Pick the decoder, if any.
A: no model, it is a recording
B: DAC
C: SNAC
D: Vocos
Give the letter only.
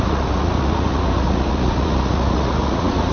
D